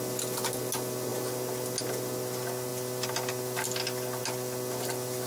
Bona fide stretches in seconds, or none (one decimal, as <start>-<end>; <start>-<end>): 0.0-5.3